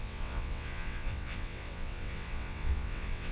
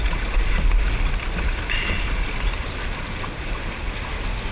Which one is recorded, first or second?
second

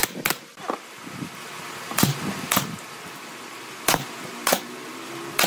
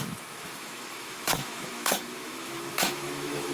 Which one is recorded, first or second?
first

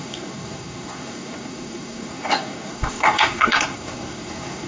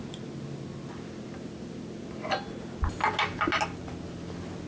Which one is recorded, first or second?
second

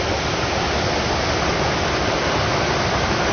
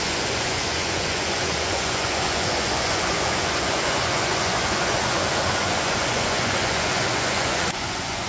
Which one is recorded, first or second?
first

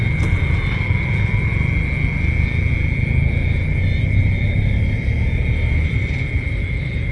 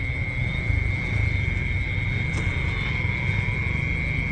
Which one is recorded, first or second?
second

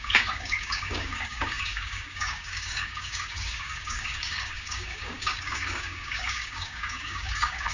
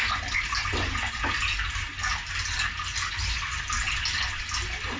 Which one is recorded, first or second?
second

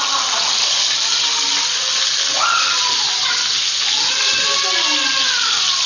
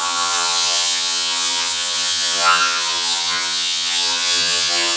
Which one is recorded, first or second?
first